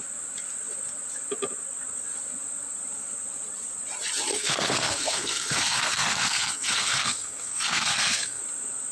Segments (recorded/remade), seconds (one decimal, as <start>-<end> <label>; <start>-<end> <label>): 0.0-4.3 recorded; 4.3-8.4 remade; 8.4-8.9 recorded